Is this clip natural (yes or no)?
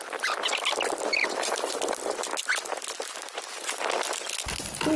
yes